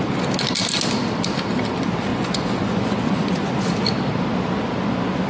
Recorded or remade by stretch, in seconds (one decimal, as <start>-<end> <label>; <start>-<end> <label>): 0.0-2.1 recorded; 2.1-3.5 remade; 3.5-5.3 recorded